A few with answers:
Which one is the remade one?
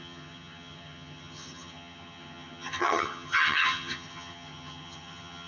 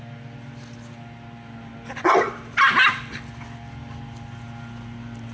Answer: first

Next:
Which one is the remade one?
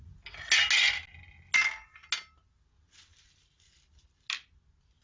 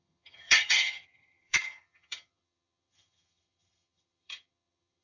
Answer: second